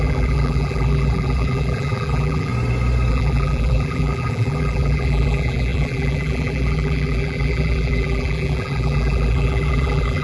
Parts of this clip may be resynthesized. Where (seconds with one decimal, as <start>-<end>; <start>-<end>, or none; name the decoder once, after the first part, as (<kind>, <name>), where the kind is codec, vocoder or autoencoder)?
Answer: 0.0-2.5 (vocoder, BigVGAN v2); 3.1-10.2

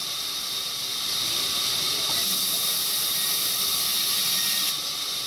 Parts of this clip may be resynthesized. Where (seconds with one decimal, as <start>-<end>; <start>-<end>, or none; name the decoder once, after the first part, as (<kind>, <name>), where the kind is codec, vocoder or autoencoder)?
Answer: 0.0-1.8 (vocoder, BigVGAN v2); 2.6-4.1